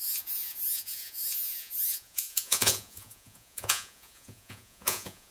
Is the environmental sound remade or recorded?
remade